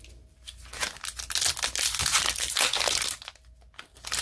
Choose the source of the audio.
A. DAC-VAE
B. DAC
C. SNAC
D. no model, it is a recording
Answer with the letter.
D